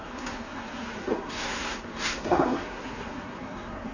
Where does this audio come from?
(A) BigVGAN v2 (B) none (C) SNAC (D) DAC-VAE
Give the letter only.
C